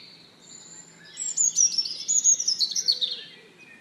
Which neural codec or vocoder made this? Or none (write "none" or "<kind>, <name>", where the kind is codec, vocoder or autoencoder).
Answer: none